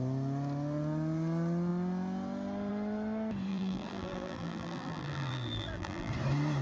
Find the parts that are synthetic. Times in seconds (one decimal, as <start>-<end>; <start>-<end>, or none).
3.5-6.1